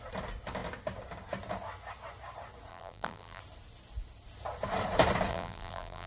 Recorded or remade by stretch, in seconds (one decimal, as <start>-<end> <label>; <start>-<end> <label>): 0.0-2.7 recorded; 2.7-3.4 remade; 3.4-5.3 recorded; 5.3-6.1 remade